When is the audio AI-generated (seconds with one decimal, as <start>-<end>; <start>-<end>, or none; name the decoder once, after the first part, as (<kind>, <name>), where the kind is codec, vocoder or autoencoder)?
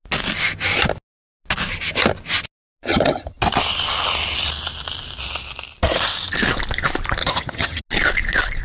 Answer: 2.9-3.4 (vocoder, HiFi-GAN); 7.2-7.8